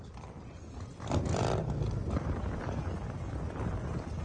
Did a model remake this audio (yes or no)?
no